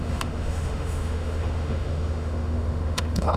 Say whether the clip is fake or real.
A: fake